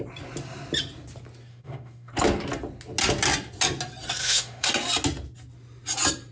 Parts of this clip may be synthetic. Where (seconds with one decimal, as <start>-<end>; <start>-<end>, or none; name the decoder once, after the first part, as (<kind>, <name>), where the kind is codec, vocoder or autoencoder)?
1.5-2.1 (autoencoder, DAC-VAE); 4.2-4.7